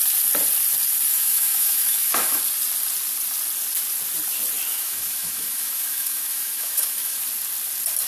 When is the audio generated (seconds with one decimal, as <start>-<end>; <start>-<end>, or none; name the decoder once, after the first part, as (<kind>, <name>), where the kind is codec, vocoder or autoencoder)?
1.1-2.4 (autoencoder, DAC-VAE); 4.7-7.2